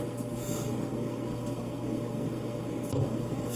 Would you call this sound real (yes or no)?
no